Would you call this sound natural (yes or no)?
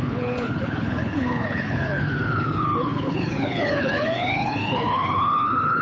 no